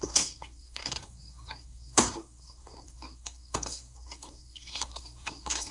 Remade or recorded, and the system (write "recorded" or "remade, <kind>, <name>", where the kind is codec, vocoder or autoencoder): remade, codec, SNAC